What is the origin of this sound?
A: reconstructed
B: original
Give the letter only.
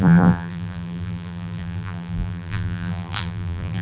A